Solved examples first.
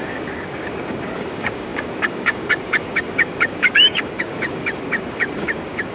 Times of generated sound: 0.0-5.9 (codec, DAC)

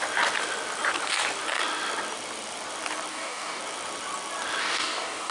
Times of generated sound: 3.1-3.6 (codec, DAC); 4.6-5.3

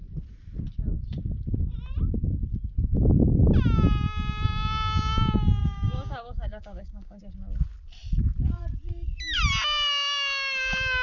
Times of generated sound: 5.6-7.2 (codec, DAC)

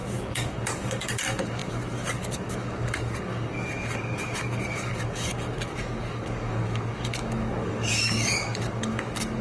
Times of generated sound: 0.0-9.4 (codec, DAC)

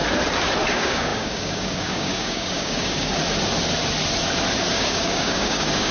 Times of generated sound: 0.7-3.1 (codec, DAC); 4.7-5.9

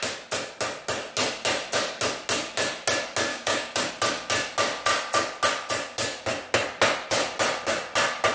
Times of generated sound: 3.3-3.9 (codec, DAC)